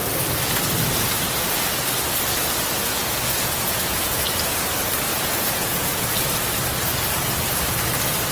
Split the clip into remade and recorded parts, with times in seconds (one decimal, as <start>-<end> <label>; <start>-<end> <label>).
0.0-2.8 recorded; 2.8-4.2 remade; 4.2-5.1 recorded; 5.1-6.1 remade; 6.1-8.3 recorded

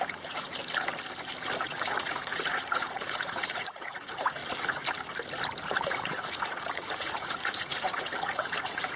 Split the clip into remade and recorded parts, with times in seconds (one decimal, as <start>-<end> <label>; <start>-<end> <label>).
0.0-0.6 remade; 0.6-1.6 recorded; 1.6-4.4 remade; 4.4-5.6 recorded; 5.6-9.0 remade